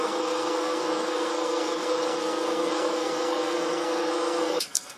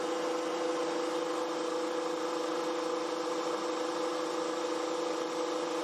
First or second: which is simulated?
first